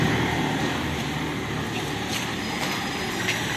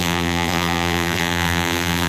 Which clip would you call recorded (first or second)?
first